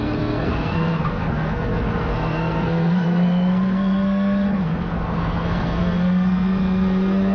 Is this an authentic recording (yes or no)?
no